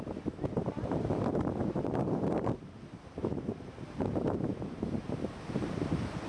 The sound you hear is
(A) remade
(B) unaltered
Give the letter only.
A